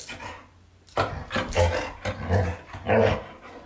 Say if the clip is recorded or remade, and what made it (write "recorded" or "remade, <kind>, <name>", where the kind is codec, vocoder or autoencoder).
recorded